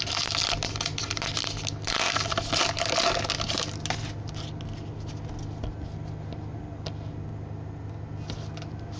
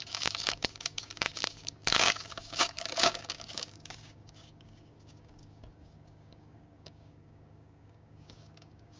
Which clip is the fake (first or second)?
second